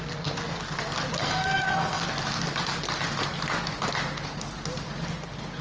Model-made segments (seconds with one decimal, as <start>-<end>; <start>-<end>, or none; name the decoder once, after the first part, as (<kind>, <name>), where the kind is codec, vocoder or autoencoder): 1.2-2.0 (codec, SNAC)